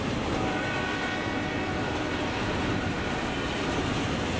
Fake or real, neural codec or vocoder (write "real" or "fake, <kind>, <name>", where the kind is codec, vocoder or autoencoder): real